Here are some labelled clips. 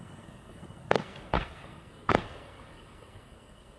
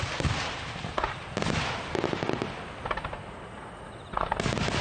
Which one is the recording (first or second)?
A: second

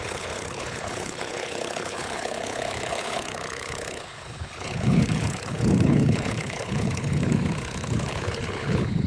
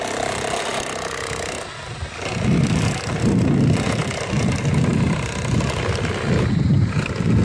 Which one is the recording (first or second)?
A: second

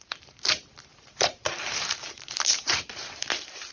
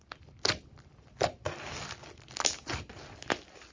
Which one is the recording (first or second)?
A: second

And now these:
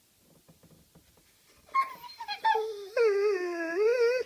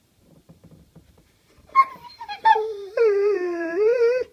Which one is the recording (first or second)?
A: first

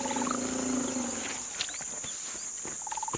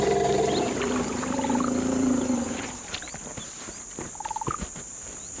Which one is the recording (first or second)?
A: first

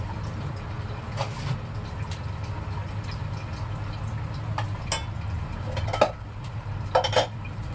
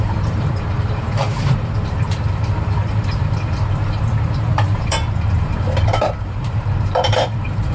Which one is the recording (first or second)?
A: first